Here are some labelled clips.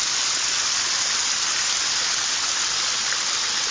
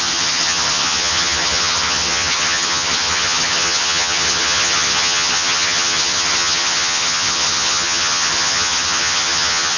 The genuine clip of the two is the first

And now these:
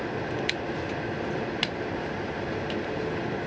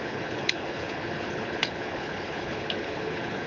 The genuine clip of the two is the first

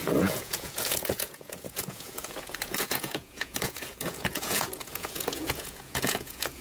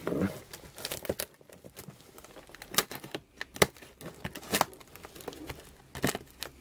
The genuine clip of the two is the second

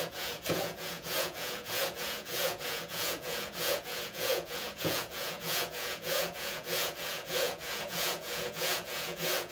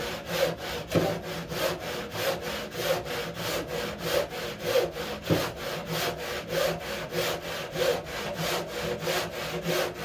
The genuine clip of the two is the second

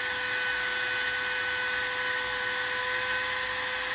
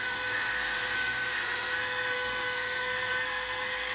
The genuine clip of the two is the first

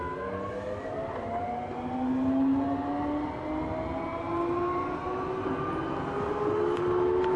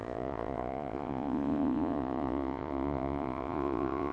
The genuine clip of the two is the first